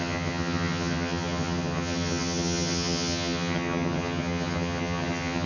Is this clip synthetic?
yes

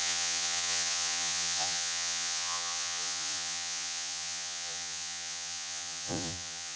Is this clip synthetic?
yes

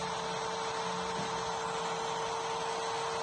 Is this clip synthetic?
no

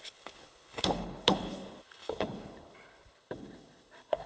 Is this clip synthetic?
yes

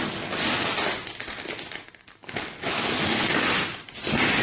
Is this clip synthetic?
no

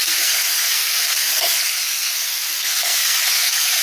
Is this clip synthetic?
yes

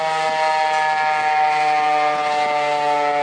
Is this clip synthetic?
no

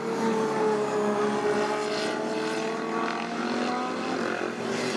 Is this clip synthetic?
no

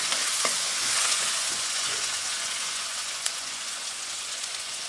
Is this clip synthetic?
yes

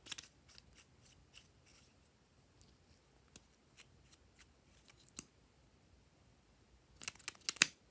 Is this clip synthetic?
no